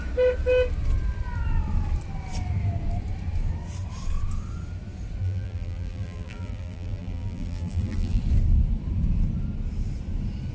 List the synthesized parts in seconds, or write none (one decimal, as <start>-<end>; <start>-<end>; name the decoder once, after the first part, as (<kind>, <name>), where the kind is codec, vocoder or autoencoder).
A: 5.2-8.2 (vocoder, BigVGAN v2)